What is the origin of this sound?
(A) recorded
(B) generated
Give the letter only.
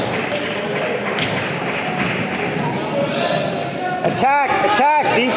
A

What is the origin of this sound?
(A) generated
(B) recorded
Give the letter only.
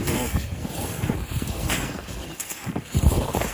A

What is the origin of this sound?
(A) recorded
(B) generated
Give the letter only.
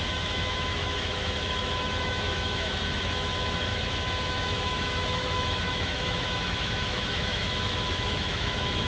B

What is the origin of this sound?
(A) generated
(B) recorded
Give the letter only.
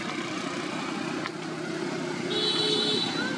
B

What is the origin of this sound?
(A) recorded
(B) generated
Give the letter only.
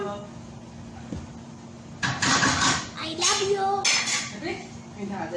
A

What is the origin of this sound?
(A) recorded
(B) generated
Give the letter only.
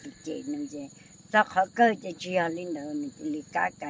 B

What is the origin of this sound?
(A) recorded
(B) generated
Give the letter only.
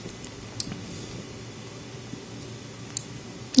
A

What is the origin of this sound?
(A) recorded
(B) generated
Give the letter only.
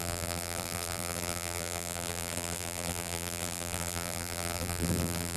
B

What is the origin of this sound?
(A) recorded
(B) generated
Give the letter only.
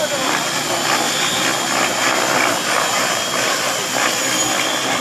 A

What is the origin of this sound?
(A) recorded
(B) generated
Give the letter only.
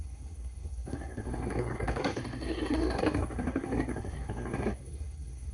B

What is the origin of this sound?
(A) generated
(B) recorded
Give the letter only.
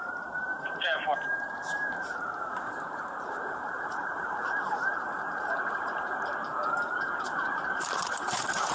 A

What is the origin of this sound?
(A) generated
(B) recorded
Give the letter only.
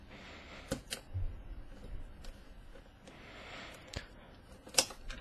B